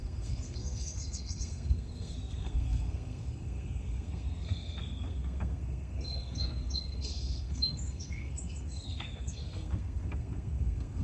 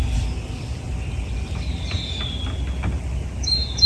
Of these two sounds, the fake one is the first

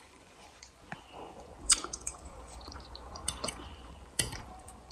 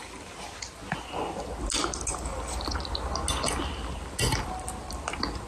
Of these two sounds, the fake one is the first